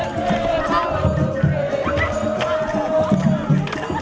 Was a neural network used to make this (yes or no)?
no